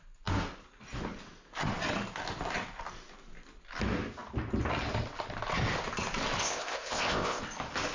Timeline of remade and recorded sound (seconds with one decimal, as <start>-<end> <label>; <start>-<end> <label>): 0.0-6.4 recorded; 6.4-7.4 remade; 7.4-7.9 recorded